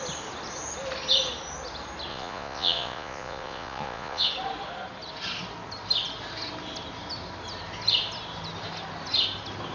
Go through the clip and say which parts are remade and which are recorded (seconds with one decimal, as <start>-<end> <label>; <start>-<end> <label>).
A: 0.0-2.1 recorded; 2.1-4.3 remade; 4.3-9.7 recorded